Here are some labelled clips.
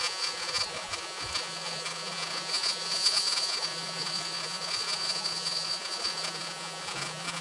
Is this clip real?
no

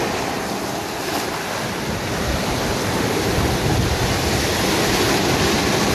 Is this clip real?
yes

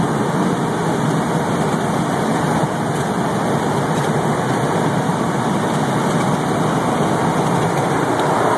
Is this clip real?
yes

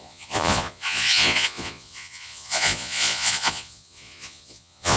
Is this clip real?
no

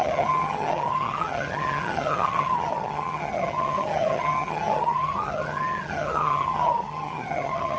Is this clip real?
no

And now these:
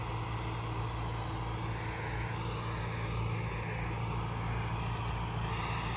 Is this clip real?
yes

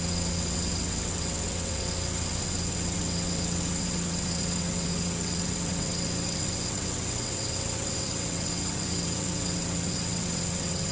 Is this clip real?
no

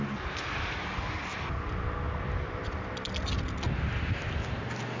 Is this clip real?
yes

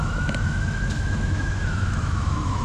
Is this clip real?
no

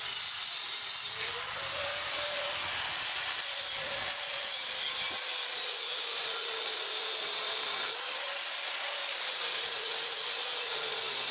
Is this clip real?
yes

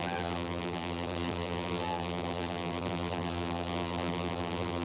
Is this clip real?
no